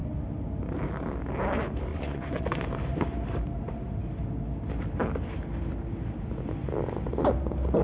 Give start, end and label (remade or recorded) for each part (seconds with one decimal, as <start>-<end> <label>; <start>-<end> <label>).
0.0-1.9 recorded; 1.9-2.6 remade; 2.6-7.8 recorded